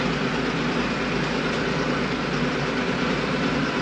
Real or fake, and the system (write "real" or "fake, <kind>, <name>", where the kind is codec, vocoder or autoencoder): real